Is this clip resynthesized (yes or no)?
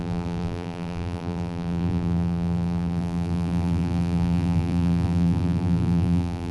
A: yes